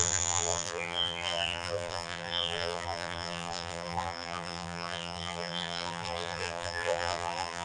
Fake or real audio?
fake